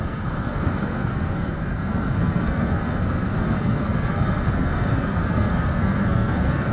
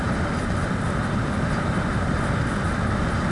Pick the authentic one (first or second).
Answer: second